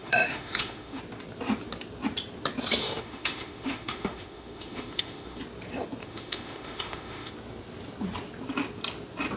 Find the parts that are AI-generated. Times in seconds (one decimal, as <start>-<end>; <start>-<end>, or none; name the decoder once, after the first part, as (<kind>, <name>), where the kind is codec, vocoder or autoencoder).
0.0-1.0 (autoencoder, DAC-VAE); 2.8-5.4; 6.0-7.3